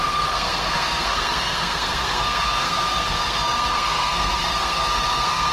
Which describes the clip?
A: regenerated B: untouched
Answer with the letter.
A